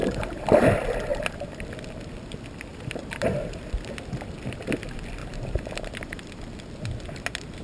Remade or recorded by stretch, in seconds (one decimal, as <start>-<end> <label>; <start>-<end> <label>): 0.0-0.5 remade; 0.5-1.1 recorded; 1.1-1.7 remade; 1.7-2.7 recorded; 2.7-3.6 remade; 3.6-5.2 recorded; 5.2-5.9 remade; 5.9-7.6 recorded